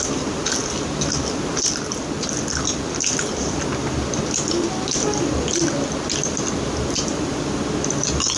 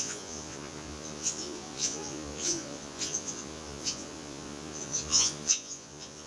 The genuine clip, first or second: first